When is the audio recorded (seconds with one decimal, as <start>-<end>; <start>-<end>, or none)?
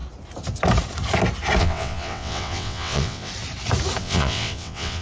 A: 0.0-1.6; 3.3-4.0